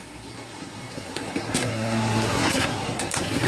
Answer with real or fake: fake